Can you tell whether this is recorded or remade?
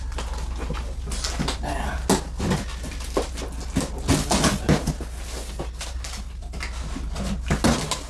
recorded